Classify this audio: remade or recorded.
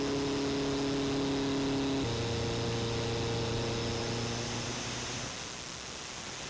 recorded